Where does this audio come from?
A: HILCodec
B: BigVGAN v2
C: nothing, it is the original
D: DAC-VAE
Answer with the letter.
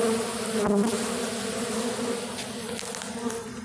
C